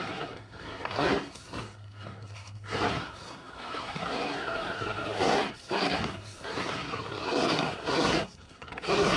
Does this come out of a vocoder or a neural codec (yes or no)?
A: yes